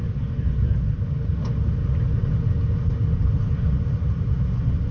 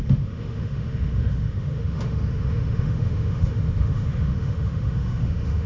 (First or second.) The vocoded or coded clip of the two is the second